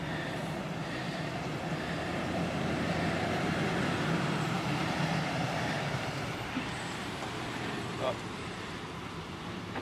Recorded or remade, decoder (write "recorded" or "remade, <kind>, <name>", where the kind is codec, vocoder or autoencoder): remade, vocoder, BigVGAN v2